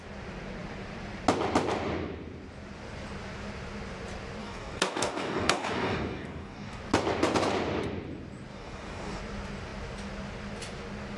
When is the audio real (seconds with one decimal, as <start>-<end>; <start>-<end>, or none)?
0.0-4.4; 6.8-8.5; 9.2-11.2